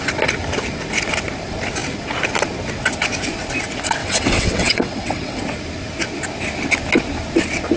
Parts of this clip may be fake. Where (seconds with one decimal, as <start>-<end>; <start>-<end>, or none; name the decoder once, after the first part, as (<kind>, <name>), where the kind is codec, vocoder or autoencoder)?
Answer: 4.0-5.4 (vocoder, WaveNeXt)